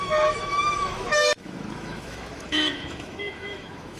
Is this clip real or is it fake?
fake